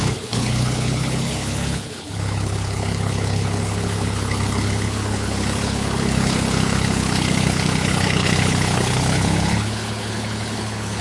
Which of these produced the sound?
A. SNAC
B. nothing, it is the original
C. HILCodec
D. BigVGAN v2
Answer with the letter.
C